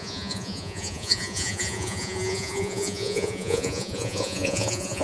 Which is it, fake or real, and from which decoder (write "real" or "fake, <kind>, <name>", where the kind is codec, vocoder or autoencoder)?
fake, vocoder, Vocos